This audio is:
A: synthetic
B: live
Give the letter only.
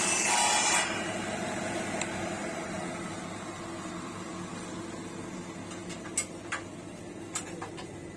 B